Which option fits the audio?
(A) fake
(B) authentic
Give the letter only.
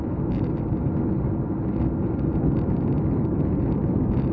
B